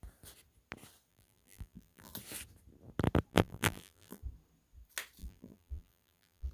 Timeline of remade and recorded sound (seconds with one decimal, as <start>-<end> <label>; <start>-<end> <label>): 0.0-1.1 recorded; 1.1-2.1 remade; 2.1-3.3 recorded; 3.3-4.2 remade; 4.2-5.2 recorded; 5.2-6.5 remade